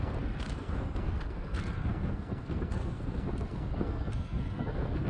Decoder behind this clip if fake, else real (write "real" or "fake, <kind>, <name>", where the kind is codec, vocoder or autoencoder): fake, codec, SNAC